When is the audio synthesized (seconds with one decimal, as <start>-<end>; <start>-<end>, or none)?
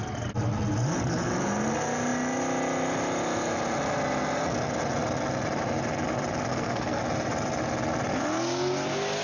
6.5-7.0